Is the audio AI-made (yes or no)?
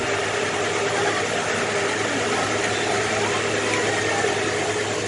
no